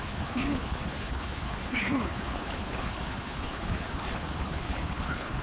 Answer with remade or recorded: remade